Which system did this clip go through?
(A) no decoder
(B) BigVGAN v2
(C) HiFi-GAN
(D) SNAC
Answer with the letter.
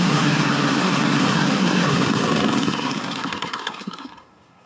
D